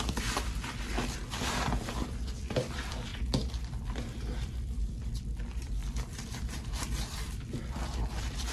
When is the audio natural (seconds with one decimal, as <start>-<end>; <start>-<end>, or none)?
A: none